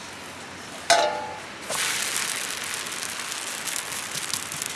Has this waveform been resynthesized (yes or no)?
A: no